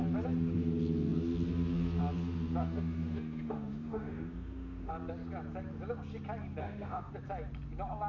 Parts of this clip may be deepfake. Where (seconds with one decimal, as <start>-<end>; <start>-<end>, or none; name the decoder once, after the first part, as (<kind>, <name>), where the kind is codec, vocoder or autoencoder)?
2.6-4.9 (autoencoder, DAC-VAE); 6.6-7.1